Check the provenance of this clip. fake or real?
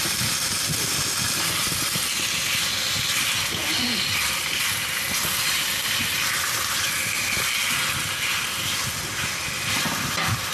real